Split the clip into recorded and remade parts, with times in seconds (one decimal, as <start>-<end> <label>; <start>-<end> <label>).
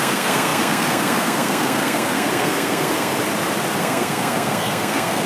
0.0-3.1 remade; 3.1-3.8 recorded; 3.8-5.3 remade